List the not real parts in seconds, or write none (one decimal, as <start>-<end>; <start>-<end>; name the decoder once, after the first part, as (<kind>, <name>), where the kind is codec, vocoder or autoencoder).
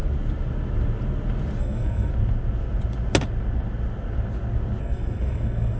1.6-2.1 (codec, SNAC); 4.8-5.8